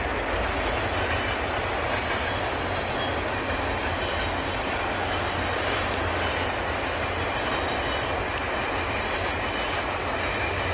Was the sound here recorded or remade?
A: recorded